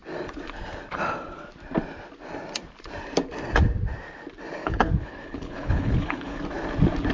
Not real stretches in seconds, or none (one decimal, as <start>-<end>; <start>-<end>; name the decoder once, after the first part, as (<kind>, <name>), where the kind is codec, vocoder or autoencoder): 4.6-6.4 (codec, HILCodec)